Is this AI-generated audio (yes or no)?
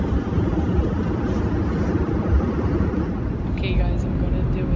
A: no